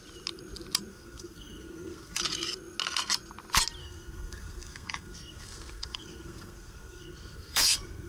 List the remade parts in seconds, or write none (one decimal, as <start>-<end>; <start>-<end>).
0.9-2.2; 3.8-8.1